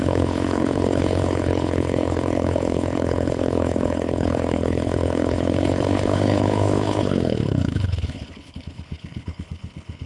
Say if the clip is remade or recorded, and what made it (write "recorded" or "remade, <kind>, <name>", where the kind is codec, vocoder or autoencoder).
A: remade, codec, HILCodec